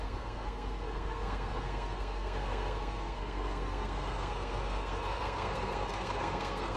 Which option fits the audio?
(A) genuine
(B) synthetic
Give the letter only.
B